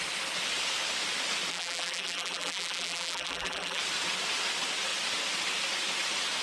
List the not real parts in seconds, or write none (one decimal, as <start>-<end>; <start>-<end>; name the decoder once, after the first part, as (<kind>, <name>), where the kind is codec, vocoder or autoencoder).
1.5-3.8 (vocoder, BigVGAN v2)